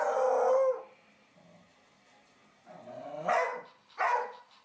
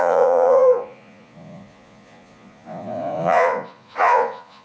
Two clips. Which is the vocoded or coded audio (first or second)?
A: second